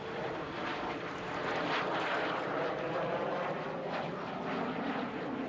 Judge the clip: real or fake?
real